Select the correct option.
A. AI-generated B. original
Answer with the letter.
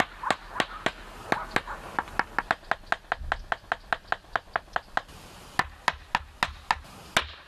B